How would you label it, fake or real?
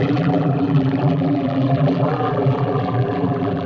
fake